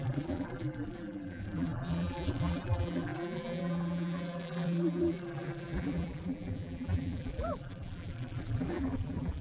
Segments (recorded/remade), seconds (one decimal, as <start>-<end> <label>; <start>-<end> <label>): 0.0-9.4 remade